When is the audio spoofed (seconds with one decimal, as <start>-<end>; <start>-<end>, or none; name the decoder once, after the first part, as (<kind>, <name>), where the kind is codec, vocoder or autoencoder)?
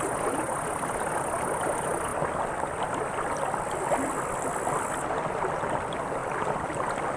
none